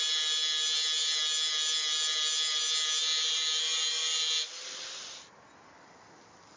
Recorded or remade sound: recorded